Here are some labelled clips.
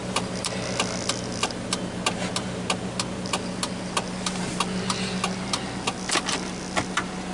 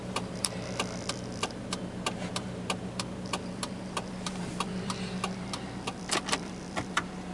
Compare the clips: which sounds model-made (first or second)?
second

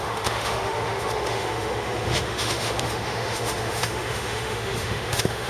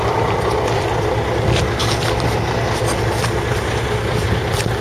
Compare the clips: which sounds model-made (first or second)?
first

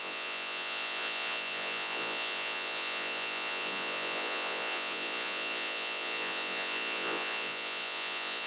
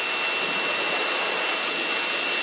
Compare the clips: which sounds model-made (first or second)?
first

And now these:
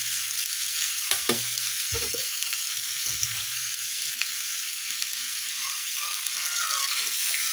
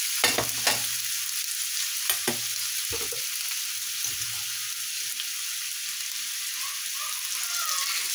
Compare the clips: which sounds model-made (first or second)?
first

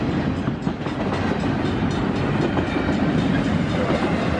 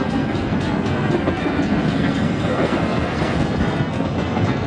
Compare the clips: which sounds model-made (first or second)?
second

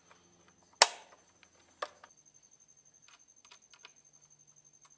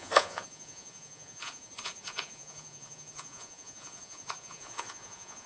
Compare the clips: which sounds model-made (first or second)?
second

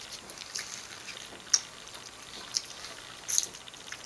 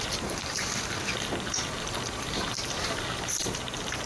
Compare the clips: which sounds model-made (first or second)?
second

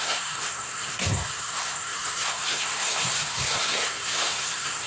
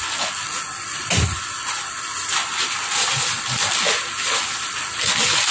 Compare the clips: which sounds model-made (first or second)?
first